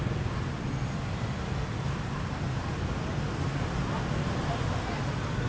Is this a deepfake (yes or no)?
no